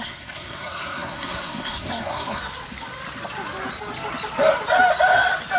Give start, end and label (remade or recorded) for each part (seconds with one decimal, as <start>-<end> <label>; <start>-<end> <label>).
0.0-2.4 remade; 2.4-5.6 recorded